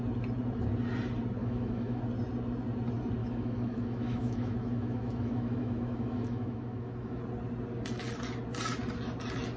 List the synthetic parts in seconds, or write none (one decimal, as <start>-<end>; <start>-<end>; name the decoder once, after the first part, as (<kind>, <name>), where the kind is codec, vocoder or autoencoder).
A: 1.4-2.0 (autoencoder, DAC-VAE); 3.2-7.2

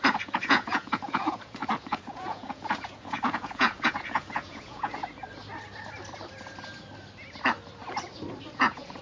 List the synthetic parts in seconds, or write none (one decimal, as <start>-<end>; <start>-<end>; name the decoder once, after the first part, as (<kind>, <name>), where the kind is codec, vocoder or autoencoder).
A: 0.0-5.0 (vocoder, Vocos); 8.5-9.0

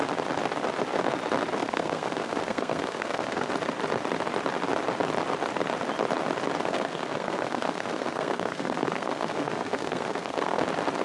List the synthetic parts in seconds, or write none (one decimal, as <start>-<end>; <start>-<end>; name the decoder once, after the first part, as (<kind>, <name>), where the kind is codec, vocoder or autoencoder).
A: 1.6-3.5 (codec, SNAC); 6.6-10.6

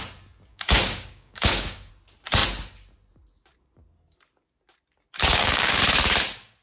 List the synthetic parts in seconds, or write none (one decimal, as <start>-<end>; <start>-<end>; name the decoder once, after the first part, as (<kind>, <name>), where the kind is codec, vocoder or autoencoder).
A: 0.5-1.9 (codec, DAC); 5.2-5.8

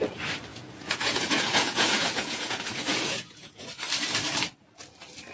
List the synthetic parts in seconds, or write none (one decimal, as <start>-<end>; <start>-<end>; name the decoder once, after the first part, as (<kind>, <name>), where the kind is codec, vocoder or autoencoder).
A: 0.5-3.7 (vocoder, Vocos)

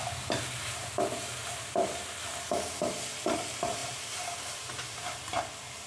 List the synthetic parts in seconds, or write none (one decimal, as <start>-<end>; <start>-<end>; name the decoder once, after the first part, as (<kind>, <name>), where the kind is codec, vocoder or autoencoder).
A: none

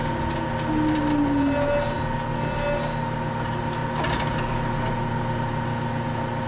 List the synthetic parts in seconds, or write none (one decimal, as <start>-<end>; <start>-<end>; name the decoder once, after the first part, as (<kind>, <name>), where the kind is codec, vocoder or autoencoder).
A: none

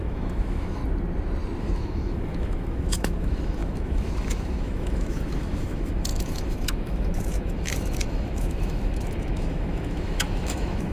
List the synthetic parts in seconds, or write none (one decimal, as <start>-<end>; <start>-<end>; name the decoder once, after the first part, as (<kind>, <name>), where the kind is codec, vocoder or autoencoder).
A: 0.0-0.8 (autoencoder, DAC-VAE); 1.6-10.9